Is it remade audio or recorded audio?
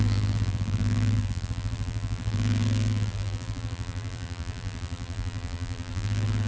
remade